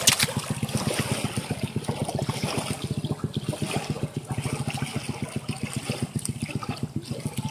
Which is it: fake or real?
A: real